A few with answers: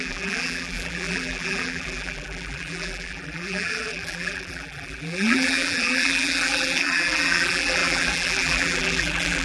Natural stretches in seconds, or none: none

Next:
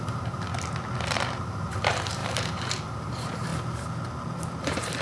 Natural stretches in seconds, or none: 0.5-1.4; 3.5-4.6